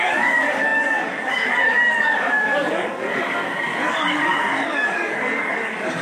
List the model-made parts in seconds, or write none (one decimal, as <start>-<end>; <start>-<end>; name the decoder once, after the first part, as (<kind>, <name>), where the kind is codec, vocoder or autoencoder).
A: 0.0-6.0 (codec, DAC)